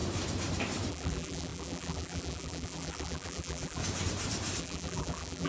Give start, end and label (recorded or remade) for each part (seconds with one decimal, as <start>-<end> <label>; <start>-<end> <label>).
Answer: 0.0-0.9 recorded; 0.9-3.8 remade; 3.8-4.6 recorded; 4.6-5.5 remade